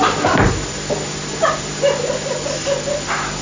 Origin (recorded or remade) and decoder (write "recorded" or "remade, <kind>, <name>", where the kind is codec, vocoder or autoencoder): recorded